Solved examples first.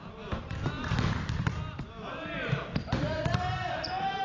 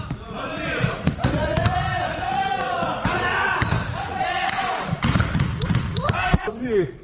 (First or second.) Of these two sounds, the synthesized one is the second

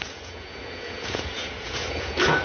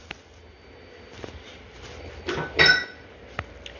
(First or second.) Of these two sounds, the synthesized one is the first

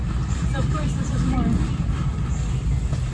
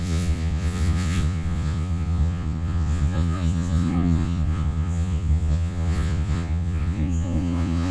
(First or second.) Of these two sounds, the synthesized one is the second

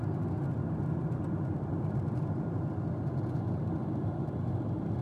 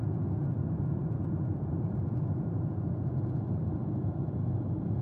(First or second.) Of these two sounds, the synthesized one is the second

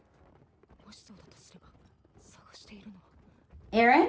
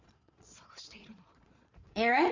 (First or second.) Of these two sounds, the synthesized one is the second